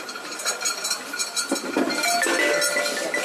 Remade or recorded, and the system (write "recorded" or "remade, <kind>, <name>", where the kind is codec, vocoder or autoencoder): recorded